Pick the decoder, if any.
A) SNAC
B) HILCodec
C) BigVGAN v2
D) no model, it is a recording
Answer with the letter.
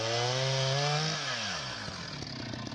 D